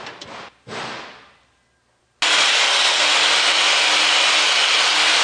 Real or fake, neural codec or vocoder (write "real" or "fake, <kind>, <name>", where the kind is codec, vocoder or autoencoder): real